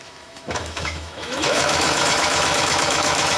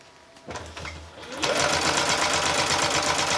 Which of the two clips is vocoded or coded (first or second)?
first